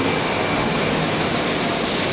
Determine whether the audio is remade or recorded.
recorded